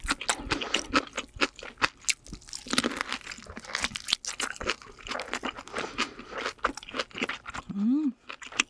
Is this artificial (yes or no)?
no